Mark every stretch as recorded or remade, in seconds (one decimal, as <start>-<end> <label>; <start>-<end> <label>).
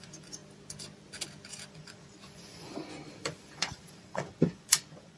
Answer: 0.0-0.4 remade; 0.4-1.7 recorded; 1.7-5.2 remade